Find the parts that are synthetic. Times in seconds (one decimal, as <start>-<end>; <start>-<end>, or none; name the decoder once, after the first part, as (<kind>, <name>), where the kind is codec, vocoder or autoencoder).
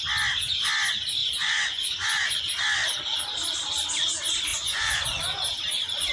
1.2-2.4 (vocoder, Vocos); 4.5-5.2